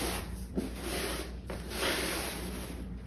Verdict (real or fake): real